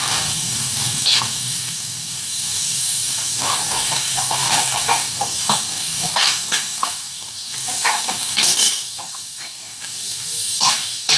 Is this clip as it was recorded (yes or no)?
no